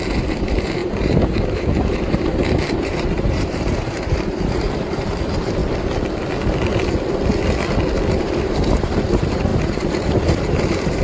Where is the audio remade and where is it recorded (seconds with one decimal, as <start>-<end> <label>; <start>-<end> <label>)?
0.0-5.6 remade; 5.6-8.2 recorded; 8.2-11.0 remade